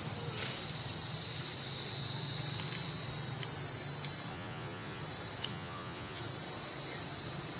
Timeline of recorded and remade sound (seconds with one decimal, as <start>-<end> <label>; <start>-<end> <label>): 0.0-4.3 recorded; 4.3-5.0 remade; 5.0-5.5 recorded; 5.5-6.2 remade; 6.2-7.6 recorded